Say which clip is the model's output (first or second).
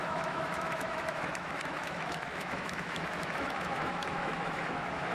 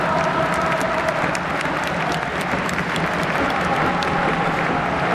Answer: first